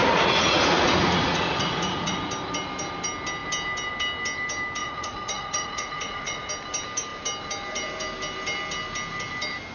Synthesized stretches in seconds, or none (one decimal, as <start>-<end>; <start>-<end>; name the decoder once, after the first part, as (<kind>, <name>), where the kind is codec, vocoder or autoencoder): 0.0-2.2 (vocoder, Vocos); 4.8-6.5